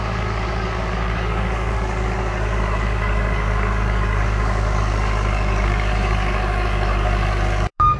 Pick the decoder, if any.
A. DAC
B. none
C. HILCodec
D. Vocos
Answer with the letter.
A